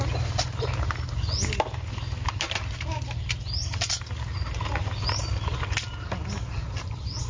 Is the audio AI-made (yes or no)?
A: no